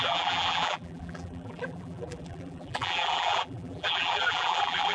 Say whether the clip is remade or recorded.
remade